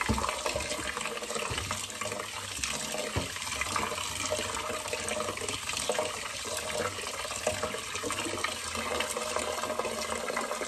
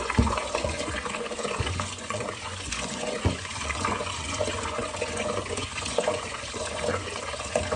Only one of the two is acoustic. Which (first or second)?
first